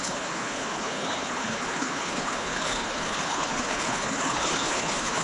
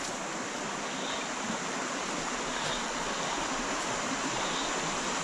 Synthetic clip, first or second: first